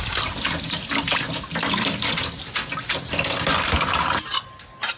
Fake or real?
real